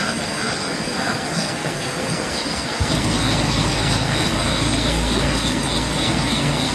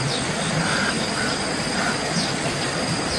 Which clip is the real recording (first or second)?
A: second